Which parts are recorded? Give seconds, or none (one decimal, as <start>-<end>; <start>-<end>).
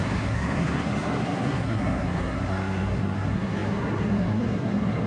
none